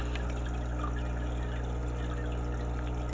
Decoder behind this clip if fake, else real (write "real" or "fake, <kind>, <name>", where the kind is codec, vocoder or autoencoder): real